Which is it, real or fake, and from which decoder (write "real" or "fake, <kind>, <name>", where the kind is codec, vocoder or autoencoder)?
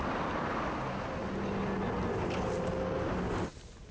real